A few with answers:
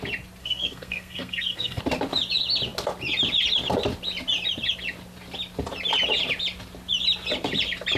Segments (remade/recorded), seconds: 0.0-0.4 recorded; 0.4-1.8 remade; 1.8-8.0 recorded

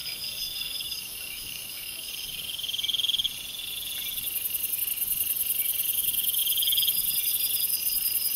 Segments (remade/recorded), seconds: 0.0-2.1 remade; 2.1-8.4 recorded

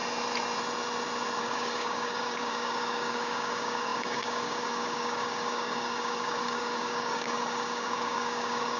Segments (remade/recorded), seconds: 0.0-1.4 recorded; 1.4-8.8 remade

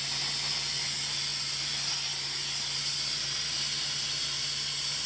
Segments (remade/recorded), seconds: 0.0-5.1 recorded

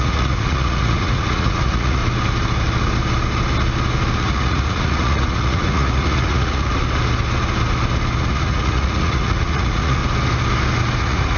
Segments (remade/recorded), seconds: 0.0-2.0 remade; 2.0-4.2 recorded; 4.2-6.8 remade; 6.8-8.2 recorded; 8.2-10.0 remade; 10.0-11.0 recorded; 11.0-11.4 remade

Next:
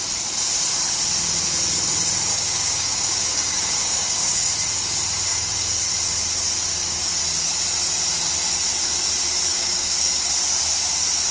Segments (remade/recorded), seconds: 0.0-2.3 recorded; 2.3-4.5 remade; 4.5-5.3 recorded; 5.3-5.9 remade; 5.9-6.7 recorded; 6.7-7.2 remade; 7.2-9.5 recorded; 9.5-10.3 remade; 10.3-11.3 recorded

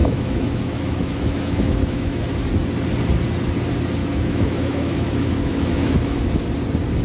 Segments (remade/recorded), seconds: 0.0-2.2 remade; 2.2-4.0 recorded; 4.0-6.2 remade; 6.2-7.0 recorded